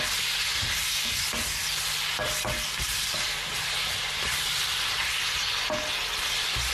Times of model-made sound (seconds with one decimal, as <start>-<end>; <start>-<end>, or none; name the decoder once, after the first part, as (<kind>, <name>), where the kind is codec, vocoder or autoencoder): 0.5-1.1 (vocoder, BigVGAN v2); 1.6-5.6